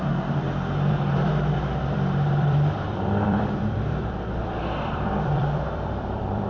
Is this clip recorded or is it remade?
remade